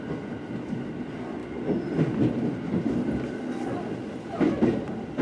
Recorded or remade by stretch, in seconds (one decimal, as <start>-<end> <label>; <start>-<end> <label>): 0.0-5.2 recorded